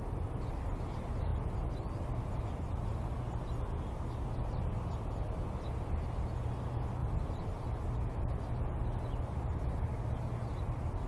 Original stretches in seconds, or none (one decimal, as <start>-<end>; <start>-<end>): 0.0-1.3; 2.6-7.0; 7.5-11.1